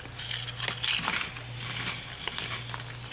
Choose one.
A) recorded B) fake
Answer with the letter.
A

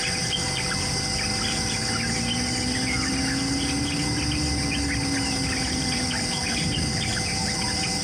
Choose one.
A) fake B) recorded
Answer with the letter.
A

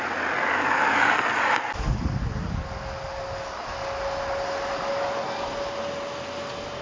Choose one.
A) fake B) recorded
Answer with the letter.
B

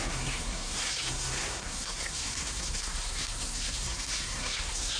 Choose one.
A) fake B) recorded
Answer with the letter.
A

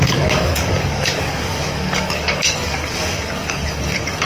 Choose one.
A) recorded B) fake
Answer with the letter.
B